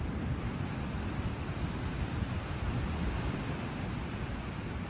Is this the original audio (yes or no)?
yes